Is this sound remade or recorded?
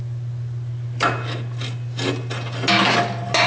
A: recorded